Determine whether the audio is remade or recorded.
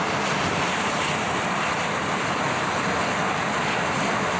recorded